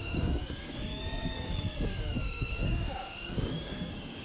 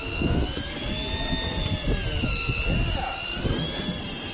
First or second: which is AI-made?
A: first